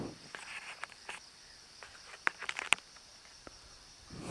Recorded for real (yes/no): yes